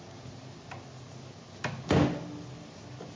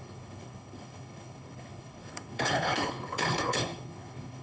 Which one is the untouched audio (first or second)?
first